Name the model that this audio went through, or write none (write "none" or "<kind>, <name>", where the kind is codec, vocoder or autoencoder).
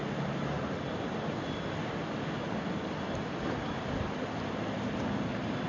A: none